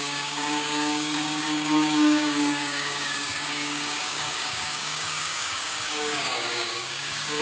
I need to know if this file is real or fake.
fake